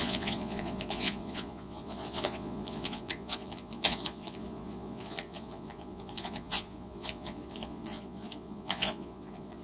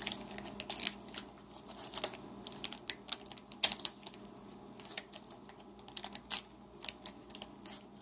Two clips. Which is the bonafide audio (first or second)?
second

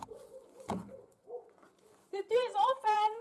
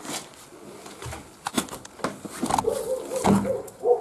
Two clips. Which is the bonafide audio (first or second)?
second